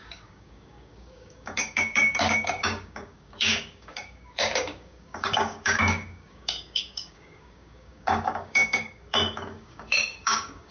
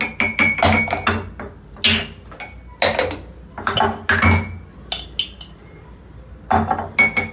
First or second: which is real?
second